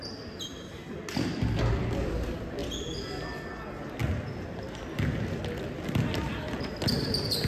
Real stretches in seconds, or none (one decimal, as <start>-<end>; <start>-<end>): 0.0-7.5